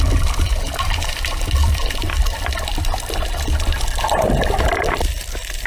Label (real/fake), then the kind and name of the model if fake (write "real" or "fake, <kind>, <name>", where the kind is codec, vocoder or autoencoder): fake, vocoder, BigVGAN v2